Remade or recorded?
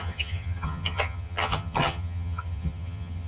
remade